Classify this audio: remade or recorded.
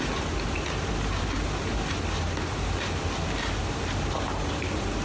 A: recorded